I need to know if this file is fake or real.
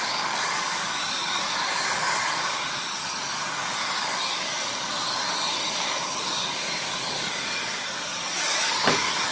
fake